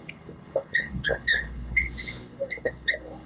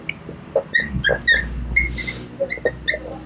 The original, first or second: second